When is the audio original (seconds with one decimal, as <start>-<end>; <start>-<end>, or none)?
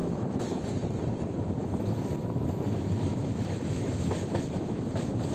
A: 0.9-1.6; 4.8-5.3